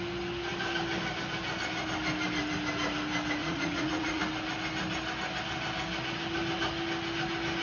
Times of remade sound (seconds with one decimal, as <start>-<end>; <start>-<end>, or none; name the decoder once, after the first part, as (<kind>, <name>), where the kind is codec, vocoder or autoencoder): 3.4-4.2 (vocoder, Vocos)